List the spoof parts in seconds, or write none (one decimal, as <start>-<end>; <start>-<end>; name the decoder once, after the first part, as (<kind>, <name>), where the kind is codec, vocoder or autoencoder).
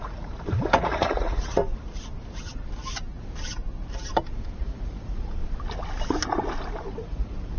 0.0-1.6 (vocoder, Vocos); 4.6-5.4; 6.8-7.6